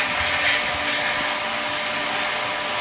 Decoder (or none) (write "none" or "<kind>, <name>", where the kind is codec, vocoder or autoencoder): none